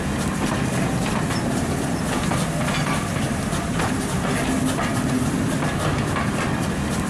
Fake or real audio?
real